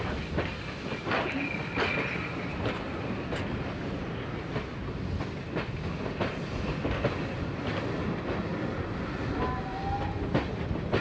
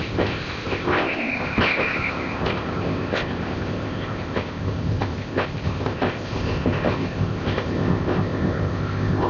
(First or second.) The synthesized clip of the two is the second